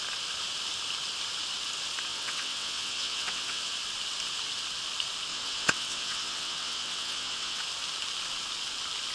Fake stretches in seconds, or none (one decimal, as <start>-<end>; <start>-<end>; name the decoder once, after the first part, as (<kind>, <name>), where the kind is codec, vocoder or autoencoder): 2.1-3.7 (vocoder, WaveNeXt); 5.3-7.6